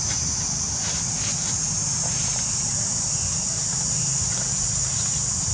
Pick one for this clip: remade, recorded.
remade